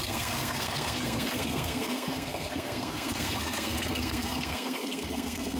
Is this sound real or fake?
fake